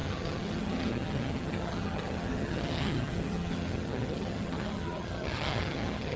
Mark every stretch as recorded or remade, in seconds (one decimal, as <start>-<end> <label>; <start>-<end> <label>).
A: 0.0-6.2 remade